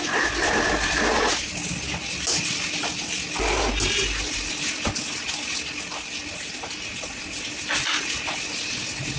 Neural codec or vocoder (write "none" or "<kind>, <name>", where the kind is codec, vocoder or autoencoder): none